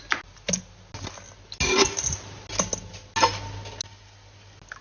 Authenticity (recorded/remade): recorded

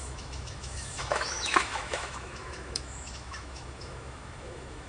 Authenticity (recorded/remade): remade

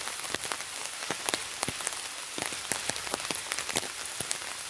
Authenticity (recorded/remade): recorded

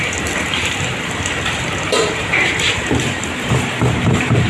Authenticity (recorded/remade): remade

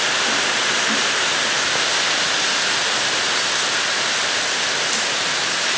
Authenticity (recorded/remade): recorded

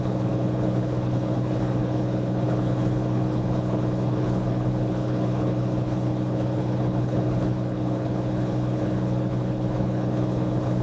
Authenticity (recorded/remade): remade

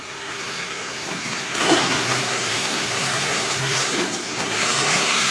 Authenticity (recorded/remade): remade